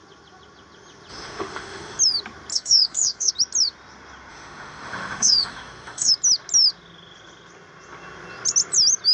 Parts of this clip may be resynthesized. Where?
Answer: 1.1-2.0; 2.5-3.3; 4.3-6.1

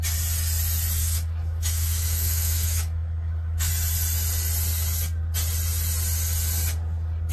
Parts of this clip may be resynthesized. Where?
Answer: 1.0-3.7

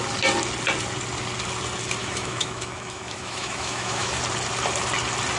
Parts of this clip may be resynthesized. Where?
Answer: 2.0-4.2

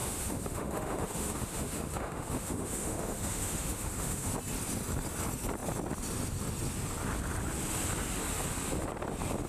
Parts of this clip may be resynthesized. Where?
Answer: 0.0-4.3